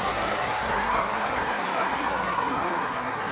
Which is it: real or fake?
fake